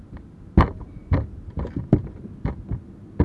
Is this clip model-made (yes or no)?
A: no